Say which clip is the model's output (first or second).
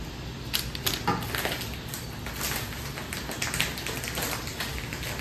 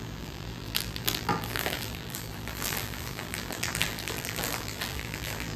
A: second